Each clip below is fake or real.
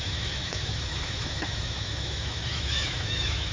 fake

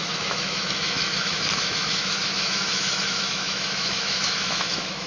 fake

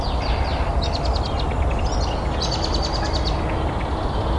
real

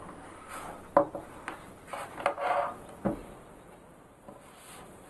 real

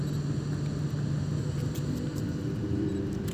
real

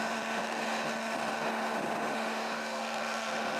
fake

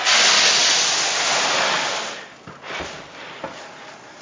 real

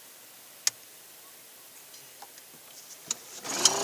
real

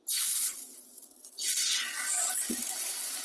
real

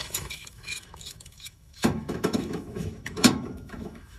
fake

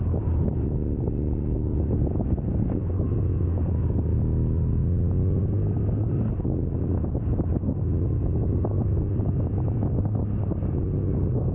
real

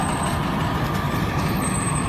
real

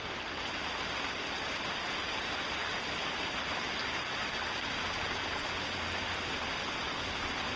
real